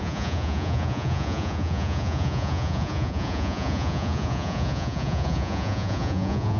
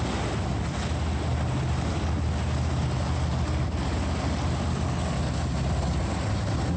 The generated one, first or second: first